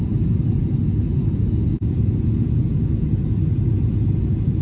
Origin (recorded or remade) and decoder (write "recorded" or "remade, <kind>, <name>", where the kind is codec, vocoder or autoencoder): remade, vocoder, Vocos